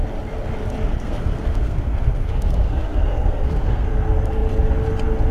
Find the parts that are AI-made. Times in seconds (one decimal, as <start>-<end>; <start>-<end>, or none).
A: 0.9-3.9